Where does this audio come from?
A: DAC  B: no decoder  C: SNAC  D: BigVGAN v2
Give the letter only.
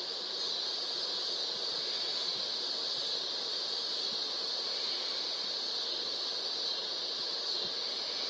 B